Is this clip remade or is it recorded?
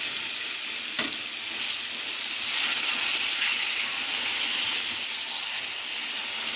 recorded